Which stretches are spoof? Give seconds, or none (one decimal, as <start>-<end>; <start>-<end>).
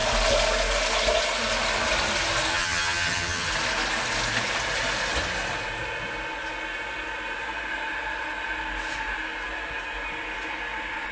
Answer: 2.5-3.5